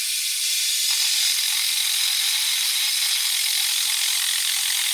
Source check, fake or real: real